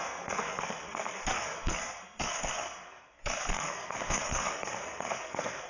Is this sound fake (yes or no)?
yes